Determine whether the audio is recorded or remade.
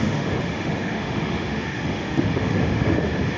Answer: remade